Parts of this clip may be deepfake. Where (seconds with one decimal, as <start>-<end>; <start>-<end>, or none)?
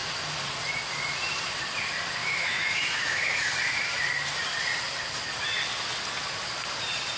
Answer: 2.2-3.5